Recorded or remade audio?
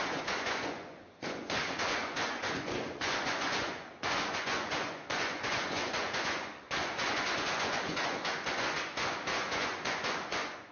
remade